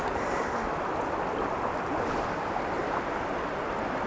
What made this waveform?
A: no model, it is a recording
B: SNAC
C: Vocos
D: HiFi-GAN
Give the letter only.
A